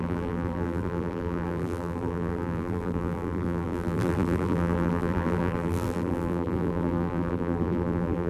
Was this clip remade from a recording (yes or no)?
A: yes